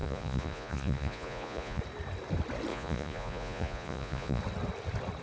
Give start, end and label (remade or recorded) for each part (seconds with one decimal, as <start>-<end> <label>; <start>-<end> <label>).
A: 0.0-1.8 remade; 1.8-2.7 recorded; 2.7-4.4 remade; 4.4-5.2 recorded